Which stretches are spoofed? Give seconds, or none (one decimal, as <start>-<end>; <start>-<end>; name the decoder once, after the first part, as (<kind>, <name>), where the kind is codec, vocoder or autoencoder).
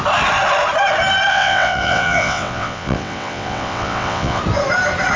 1.3-4.4 (vocoder, WaveNeXt)